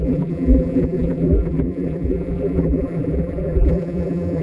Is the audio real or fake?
fake